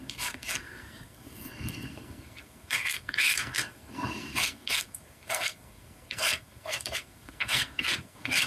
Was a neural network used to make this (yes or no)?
yes